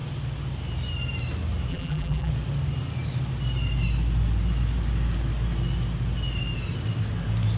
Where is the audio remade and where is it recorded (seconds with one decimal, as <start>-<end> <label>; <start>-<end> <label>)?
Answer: 0.0-1.7 recorded; 1.7-2.3 remade; 2.3-7.6 recorded